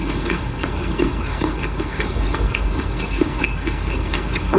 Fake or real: fake